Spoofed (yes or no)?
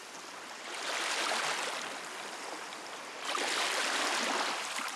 no